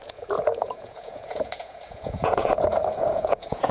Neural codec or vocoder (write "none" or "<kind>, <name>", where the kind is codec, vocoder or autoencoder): vocoder, Vocos